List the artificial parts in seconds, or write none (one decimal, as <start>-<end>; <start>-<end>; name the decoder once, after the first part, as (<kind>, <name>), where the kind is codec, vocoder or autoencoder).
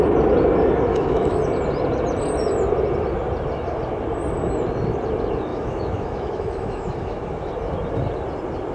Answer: 0.9-1.4 (autoencoder, DAC-VAE); 5.5-7.5